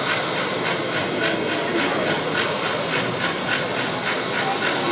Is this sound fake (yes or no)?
no